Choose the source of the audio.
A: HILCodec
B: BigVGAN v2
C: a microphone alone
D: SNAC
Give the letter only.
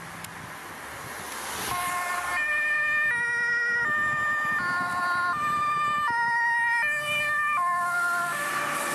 C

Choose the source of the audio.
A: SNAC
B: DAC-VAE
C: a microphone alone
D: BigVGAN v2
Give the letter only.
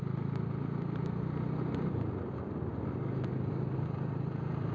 C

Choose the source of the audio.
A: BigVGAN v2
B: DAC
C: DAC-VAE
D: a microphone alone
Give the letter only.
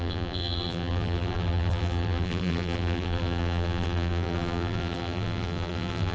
A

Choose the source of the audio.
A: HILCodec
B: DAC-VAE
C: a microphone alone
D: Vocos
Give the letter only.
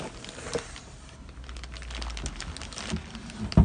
C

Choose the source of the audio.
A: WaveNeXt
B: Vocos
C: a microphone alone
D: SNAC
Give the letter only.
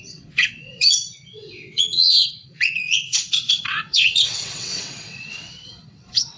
A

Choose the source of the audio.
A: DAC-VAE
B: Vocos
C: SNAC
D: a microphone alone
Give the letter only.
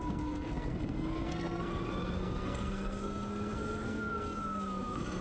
C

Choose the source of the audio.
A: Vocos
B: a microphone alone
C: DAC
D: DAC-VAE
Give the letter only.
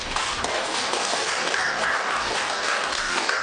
C